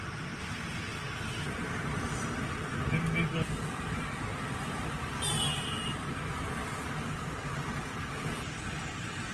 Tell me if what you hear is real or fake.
real